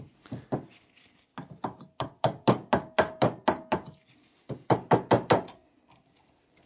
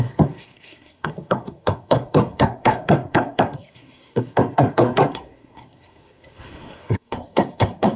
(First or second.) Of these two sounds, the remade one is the second